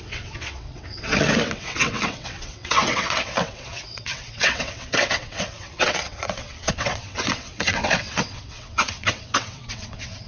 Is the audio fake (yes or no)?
yes